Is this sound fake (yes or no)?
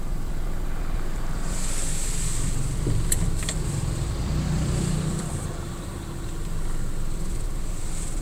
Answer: yes